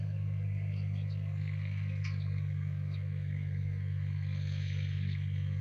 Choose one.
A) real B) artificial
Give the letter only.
B